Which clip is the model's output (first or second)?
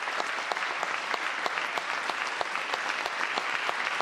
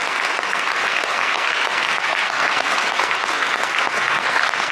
second